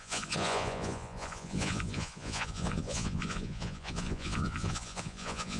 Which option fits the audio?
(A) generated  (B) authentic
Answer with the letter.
A